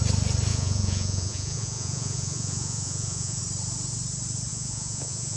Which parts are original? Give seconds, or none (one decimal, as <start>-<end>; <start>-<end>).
0.0-0.5; 3.4-4.5